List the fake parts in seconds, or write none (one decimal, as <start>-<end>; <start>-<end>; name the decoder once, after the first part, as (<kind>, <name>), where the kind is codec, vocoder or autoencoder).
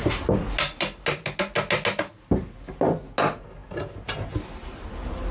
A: none